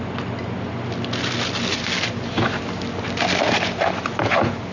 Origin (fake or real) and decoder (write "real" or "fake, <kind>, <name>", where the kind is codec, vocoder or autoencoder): real